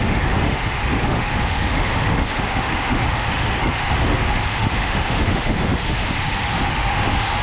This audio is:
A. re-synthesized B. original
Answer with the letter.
A